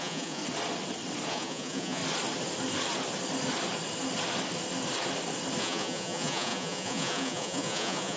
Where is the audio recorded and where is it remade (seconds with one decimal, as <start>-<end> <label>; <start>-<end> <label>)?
0.0-0.4 remade; 0.4-1.3 recorded; 1.3-2.0 remade; 2.0-5.6 recorded; 5.6-8.2 remade